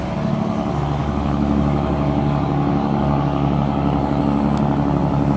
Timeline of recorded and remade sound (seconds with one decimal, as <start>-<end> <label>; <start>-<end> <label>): 0.0-1.0 recorded; 1.0-4.2 remade; 4.2-5.4 recorded

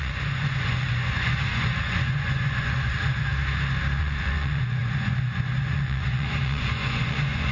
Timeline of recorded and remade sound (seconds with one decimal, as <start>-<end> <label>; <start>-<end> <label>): 0.0-3.3 remade; 3.3-4.0 recorded; 4.0-7.5 remade

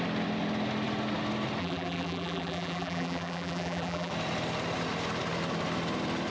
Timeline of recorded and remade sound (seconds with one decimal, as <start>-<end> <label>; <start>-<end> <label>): 0.0-1.6 recorded; 1.6-4.1 remade; 4.1-6.3 recorded

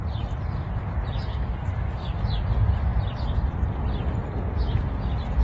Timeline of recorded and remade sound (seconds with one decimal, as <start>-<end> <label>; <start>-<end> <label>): 0.0-1.3 recorded; 1.3-2.1 remade; 2.1-5.4 recorded

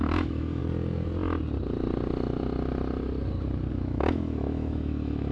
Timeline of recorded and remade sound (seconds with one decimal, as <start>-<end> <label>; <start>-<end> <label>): 0.0-0.6 remade; 0.6-3.7 recorded; 3.7-5.3 remade

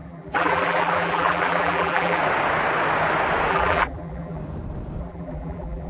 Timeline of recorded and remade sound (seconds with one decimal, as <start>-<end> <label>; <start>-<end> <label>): 0.0-2.2 remade; 2.2-3.5 recorded; 3.5-4.4 remade; 4.4-5.0 recorded; 5.0-5.9 remade

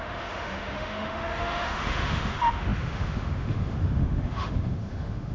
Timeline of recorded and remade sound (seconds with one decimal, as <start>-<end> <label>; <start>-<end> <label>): 0.0-5.3 remade